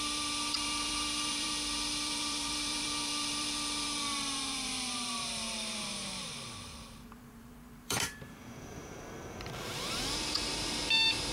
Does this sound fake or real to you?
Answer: fake